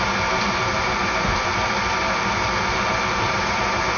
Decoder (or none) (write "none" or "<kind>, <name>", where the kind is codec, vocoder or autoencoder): vocoder, BigVGAN v2